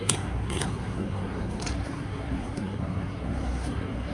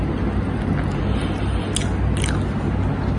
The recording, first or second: second